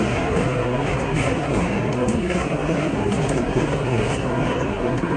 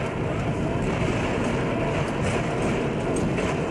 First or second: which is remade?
first